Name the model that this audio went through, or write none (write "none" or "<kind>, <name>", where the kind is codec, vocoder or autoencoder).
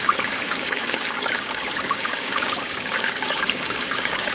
codec, DAC